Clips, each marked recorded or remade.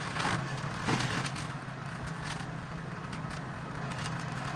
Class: recorded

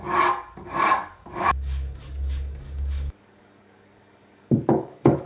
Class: remade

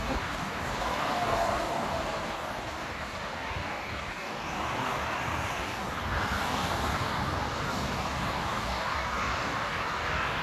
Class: remade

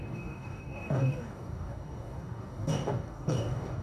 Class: remade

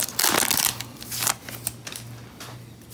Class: recorded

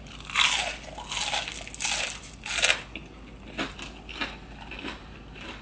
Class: recorded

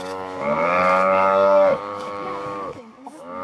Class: remade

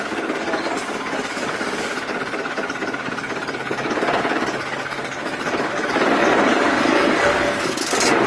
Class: remade